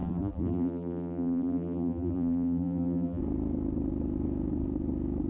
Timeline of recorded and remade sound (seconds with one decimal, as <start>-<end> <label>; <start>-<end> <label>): 0.0-3.2 remade; 3.2-5.3 recorded